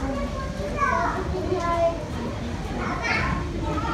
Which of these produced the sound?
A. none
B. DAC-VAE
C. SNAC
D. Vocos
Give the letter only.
A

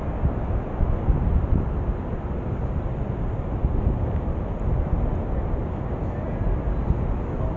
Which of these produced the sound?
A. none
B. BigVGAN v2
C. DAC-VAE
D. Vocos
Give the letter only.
A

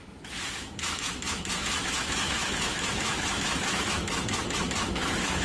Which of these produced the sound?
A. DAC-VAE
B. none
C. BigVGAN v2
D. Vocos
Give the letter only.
A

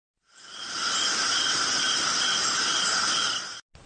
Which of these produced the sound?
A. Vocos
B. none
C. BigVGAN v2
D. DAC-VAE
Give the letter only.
B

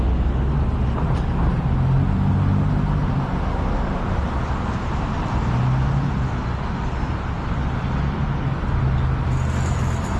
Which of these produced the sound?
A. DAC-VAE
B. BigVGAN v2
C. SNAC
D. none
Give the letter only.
D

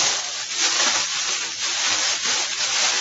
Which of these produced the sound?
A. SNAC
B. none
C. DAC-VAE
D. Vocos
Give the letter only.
B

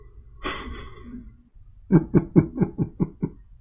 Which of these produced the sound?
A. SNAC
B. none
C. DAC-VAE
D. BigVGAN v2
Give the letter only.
B